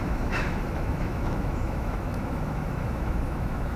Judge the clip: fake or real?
fake